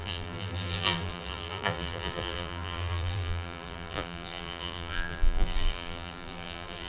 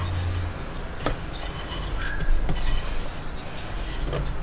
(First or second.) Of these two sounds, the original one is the second